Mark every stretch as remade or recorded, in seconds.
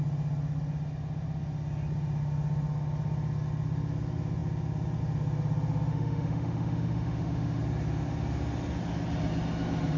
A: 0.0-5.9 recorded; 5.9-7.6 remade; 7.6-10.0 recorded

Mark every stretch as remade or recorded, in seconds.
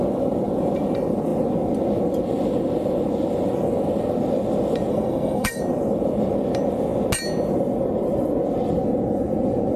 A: 0.0-4.9 recorded; 4.9-5.6 remade; 5.6-9.8 recorded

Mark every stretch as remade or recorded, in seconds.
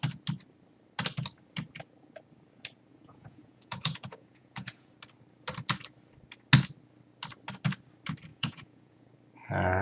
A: 0.0-2.9 recorded; 2.9-4.9 remade; 4.9-8.3 recorded; 8.3-9.1 remade; 9.1-9.8 recorded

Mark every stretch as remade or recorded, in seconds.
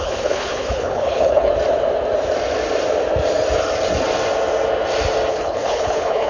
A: 0.0-1.5 remade; 1.5-5.3 recorded; 5.3-6.3 remade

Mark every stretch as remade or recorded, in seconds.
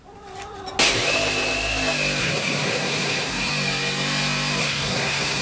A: 0.0-2.2 recorded; 2.2-3.5 remade; 3.5-4.6 recorded; 4.6-5.4 remade